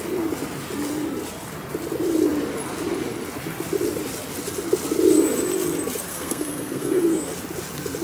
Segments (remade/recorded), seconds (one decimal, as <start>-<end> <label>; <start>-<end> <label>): 0.0-6.1 recorded; 6.1-7.3 remade; 7.3-8.0 recorded